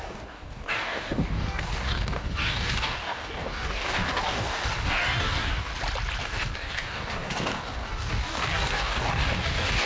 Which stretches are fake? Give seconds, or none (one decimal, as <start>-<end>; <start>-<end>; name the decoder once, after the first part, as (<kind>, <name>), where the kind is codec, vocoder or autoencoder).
0.0-5.7 (codec, DAC); 6.2-9.9